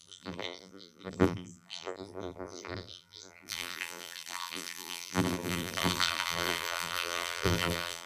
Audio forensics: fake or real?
fake